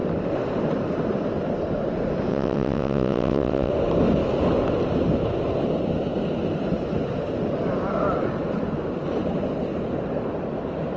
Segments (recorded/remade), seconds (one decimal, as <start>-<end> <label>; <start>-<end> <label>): 0.0-2.3 recorded; 2.3-3.7 remade; 3.7-11.0 recorded